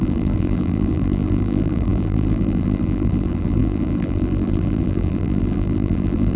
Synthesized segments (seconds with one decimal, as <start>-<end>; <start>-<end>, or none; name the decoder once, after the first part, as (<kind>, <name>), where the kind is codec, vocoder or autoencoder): 0.0-6.4 (vocoder, BigVGAN v2)